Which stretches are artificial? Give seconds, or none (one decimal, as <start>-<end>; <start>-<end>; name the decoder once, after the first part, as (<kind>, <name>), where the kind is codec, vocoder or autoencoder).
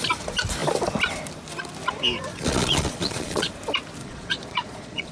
2.3-3.5 (vocoder, Vocos); 4.0-5.1